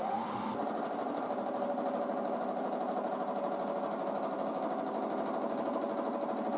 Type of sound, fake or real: real